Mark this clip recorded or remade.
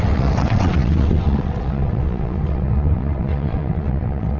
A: remade